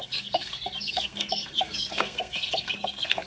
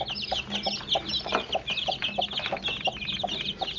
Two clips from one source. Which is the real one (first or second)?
second